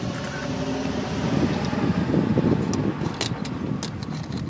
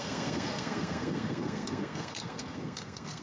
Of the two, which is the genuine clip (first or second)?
first